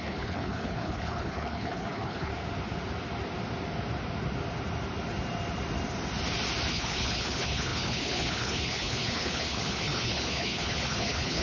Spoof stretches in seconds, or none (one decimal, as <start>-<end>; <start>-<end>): 0.0-2.3; 6.7-11.4